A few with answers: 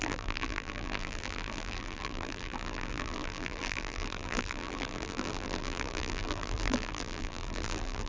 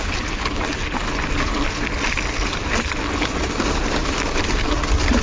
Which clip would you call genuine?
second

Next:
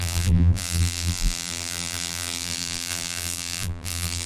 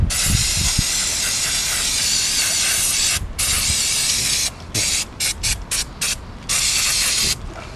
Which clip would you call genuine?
second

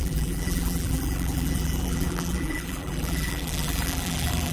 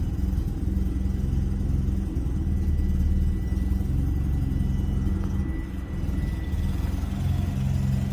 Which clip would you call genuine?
second